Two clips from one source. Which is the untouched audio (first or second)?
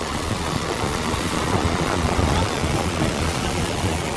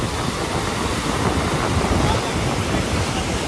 second